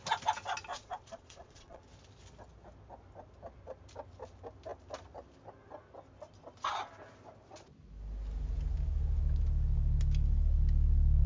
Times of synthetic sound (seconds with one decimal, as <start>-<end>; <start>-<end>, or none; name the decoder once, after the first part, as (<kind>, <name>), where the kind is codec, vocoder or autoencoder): 0.7-1.8 (vocoder, Vocos)

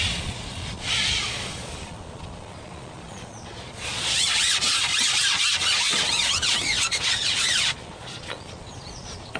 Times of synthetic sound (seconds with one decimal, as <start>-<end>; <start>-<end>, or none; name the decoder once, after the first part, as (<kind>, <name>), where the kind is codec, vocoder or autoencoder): 0.0-4.9 (vocoder, Vocos); 5.8-9.4